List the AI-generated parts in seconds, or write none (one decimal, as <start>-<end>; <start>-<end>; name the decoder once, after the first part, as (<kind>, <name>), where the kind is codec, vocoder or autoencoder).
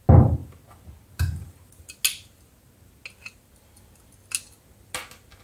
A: none